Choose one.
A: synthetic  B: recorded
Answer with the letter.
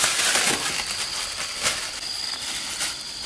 B